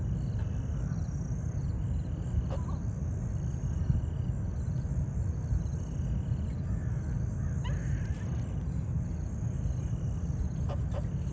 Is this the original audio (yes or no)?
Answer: yes